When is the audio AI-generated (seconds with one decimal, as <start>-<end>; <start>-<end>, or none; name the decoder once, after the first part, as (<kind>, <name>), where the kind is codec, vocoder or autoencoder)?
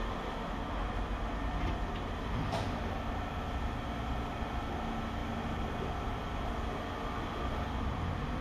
none